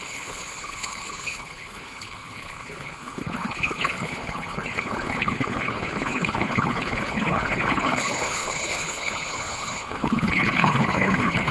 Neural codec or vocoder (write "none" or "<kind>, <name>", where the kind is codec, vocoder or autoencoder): codec, HILCodec